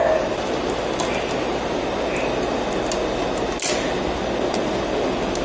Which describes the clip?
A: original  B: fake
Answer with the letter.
A